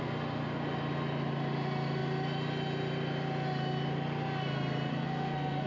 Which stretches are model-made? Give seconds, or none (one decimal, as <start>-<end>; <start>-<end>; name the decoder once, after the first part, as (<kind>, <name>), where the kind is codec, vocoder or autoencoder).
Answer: 4.9-5.7 (codec, SNAC)